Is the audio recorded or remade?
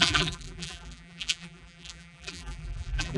remade